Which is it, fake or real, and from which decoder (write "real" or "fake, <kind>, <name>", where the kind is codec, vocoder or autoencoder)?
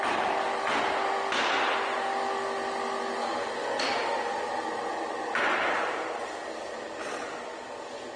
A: real